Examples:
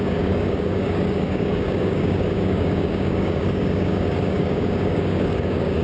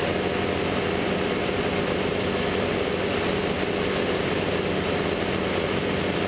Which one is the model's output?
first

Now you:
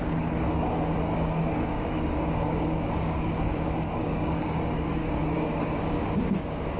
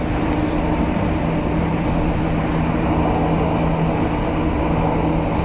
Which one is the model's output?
first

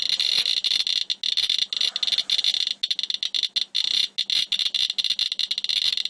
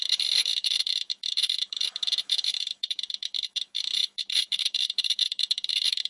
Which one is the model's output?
second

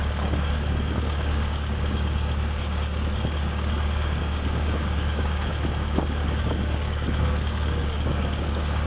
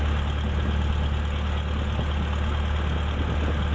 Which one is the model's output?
first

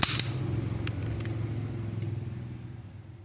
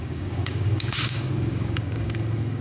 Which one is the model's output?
second